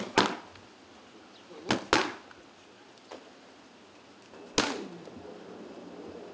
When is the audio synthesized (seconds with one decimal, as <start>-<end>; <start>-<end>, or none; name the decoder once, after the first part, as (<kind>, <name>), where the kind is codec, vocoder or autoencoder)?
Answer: none